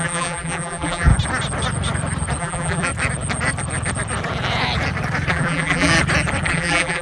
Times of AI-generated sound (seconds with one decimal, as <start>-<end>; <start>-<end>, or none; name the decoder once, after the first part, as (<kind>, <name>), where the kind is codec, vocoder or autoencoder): 0.0-1.1 (vocoder, BigVGAN v2); 2.4-2.9; 5.3-5.9; 6.5-7.0